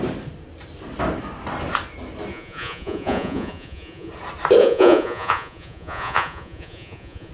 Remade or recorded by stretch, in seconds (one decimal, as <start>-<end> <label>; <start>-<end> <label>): 0.0-2.3 recorded; 2.3-4.1 remade; 4.1-4.6 recorded; 4.6-7.3 remade